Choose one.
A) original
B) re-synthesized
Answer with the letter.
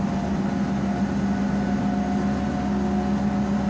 A